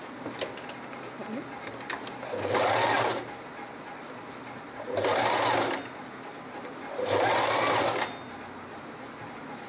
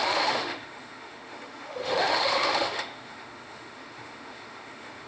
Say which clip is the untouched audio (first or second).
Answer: first